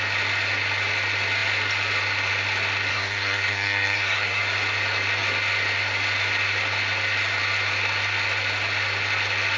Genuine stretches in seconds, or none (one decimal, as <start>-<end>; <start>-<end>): 0.0-2.9; 4.4-9.6